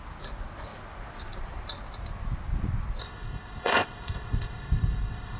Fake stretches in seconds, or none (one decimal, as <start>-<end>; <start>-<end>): 3.0-5.4